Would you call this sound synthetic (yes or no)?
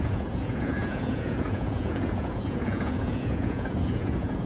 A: yes